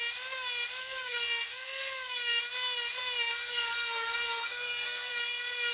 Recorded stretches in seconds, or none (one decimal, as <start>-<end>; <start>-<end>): 0.0-0.8; 2.4-3.3; 5.1-5.7